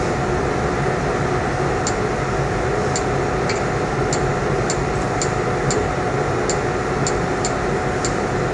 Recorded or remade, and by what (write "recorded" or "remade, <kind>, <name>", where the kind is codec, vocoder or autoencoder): recorded